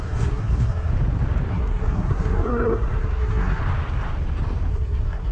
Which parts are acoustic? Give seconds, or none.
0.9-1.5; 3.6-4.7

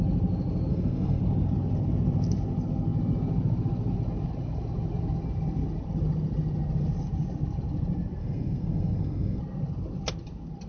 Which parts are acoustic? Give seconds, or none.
0.0-0.7; 1.2-8.2; 9.4-10.7

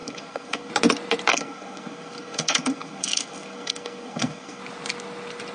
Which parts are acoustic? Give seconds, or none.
0.7-1.3; 4.6-5.5

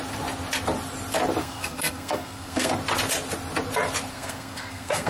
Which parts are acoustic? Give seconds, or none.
0.0-1.4; 2.7-4.1